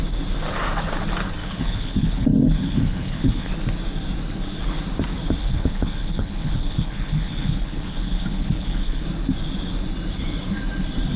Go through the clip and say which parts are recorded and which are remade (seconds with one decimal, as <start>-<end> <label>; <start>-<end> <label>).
0.0-1.4 recorded; 1.4-3.5 remade; 3.5-5.4 recorded; 5.4-9.0 remade; 9.0-11.2 recorded